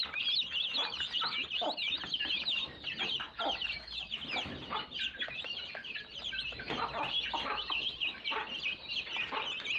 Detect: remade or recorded recorded